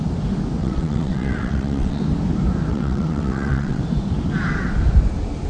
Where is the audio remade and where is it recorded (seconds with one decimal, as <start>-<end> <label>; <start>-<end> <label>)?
0.0-0.6 recorded; 0.6-2.0 remade; 2.0-2.7 recorded; 2.7-3.8 remade; 3.8-5.5 recorded